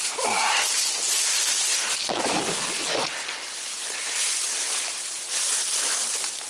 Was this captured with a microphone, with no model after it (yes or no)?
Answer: yes